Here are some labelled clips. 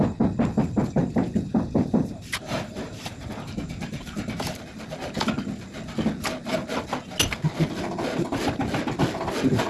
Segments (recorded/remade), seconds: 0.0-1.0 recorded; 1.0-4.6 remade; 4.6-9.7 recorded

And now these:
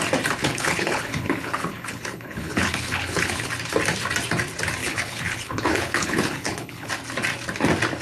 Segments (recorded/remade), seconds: 0.0-0.4 recorded; 0.4-3.5 remade; 3.5-4.8 recorded; 4.8-6.9 remade; 6.9-8.0 recorded